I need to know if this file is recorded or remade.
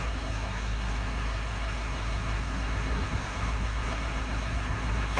remade